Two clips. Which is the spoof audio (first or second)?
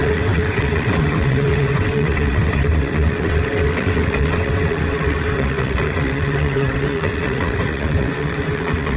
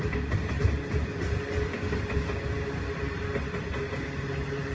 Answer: first